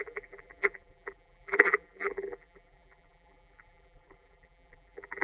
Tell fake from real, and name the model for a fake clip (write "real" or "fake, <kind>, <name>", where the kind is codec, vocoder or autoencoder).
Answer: fake, vocoder, BigVGAN v2